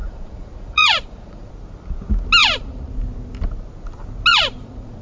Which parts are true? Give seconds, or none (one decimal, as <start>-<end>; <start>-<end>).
1.5-2.4; 2.9-4.3